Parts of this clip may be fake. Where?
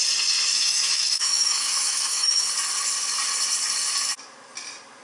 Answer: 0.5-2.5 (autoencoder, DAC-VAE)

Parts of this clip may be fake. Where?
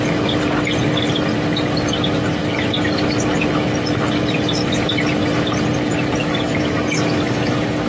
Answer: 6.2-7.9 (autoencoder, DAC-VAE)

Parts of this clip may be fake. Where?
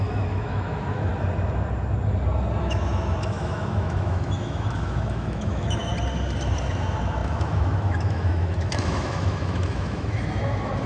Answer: 0.0-1.1 (autoencoder, DAC-VAE); 2.6-5.9; 6.6-10.9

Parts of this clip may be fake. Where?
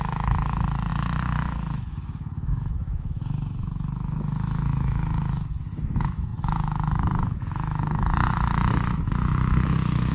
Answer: 0.0-10.1 (autoencoder, DAC-VAE)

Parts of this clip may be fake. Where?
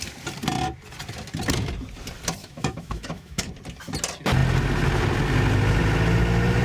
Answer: 2.4-3.5 (autoencoder, DAC-VAE)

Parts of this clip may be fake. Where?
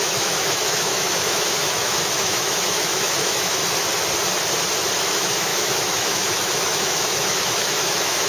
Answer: 0.0-3.6 (autoencoder, DAC-VAE); 5.0-8.3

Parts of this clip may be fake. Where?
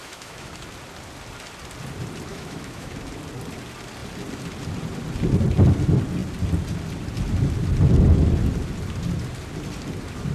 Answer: 0.0-0.5 (autoencoder, DAC-VAE); 2.3-2.9